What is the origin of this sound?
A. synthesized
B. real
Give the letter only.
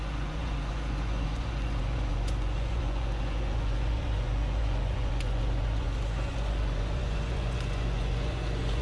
A